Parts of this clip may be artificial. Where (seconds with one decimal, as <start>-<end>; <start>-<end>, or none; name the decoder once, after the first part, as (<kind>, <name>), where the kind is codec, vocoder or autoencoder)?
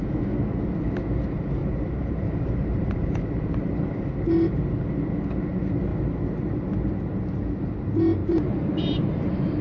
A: 1.6-3.8 (vocoder, BigVGAN v2); 8.2-9.6